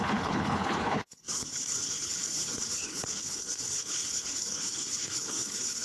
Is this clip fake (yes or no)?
yes